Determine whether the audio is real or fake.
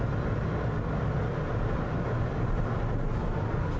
real